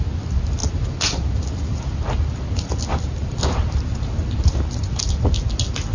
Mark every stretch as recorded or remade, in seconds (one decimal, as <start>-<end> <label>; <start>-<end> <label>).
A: 0.0-5.9 recorded